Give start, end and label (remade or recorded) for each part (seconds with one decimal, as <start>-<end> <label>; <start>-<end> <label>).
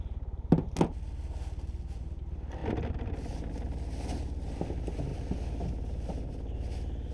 0.0-7.1 recorded